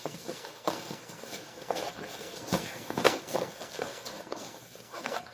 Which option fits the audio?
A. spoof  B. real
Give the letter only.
A